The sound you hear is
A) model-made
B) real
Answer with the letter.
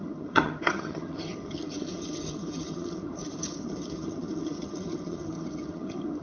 A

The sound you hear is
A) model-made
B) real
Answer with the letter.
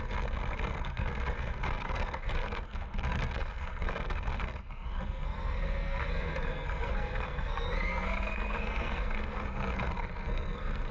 A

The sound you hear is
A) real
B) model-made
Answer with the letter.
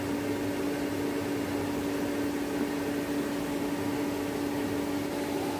A